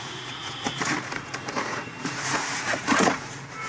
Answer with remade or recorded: remade